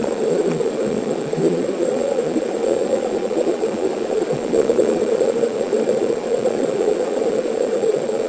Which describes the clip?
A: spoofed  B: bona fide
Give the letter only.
A